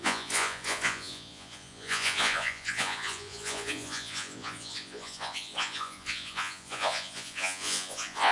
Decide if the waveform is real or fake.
fake